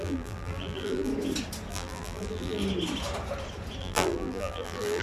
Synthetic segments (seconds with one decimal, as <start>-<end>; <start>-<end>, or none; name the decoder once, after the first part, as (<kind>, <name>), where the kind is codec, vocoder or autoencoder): 0.0-1.1 (vocoder, BigVGAN v2); 1.7-2.6; 3.8-5.0